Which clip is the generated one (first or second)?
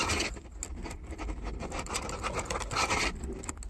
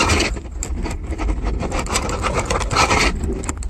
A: second